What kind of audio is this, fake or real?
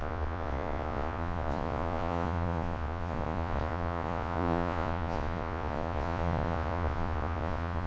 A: fake